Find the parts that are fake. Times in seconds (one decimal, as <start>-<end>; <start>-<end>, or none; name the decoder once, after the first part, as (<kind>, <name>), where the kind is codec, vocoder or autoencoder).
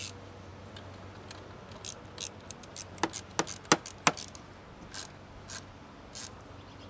none